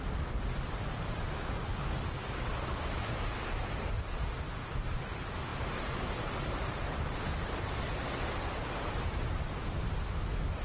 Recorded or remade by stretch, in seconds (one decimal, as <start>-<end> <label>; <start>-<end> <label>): 0.0-10.6 recorded